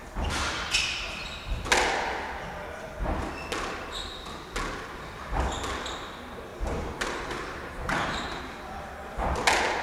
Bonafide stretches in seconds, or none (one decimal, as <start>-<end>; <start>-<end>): 0.0-6.5; 8.4-9.8